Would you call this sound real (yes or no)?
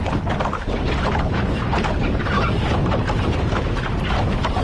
yes